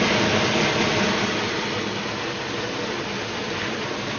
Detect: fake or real real